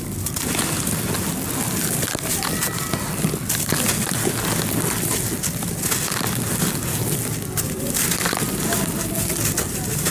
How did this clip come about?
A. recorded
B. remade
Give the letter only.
A